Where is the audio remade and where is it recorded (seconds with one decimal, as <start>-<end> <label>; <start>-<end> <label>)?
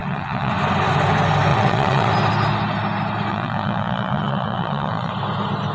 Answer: 0.0-0.5 remade; 0.5-1.5 recorded; 1.5-2.1 remade; 2.1-3.3 recorded; 3.3-5.1 remade; 5.1-5.7 recorded